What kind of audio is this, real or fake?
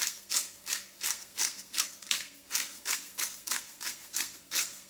fake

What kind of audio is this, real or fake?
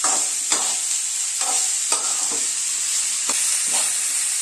real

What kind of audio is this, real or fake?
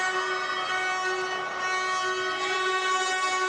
real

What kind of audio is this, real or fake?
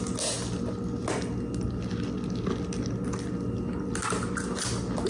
real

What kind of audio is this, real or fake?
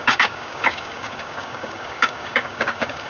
fake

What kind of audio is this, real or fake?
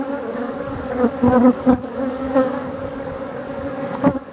fake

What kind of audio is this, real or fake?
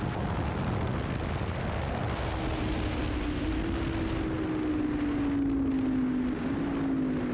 real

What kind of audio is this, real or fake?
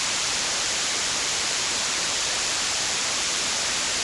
fake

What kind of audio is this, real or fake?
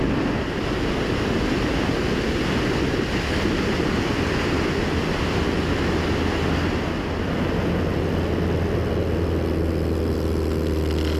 real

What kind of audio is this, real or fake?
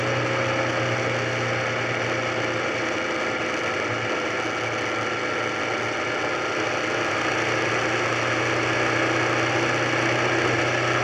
real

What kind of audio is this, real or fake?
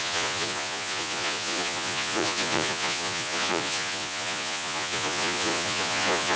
fake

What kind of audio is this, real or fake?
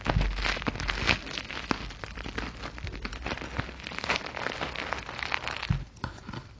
real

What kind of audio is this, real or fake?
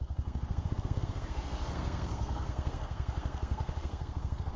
fake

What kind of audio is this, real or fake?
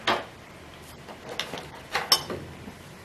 real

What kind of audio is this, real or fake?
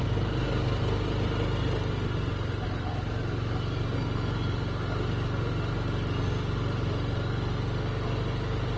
real